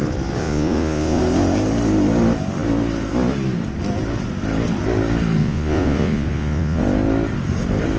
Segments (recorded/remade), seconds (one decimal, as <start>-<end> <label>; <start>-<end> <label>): 0.0-0.4 recorded; 0.4-1.2 remade; 1.2-5.4 recorded; 5.4-6.8 remade; 6.8-8.0 recorded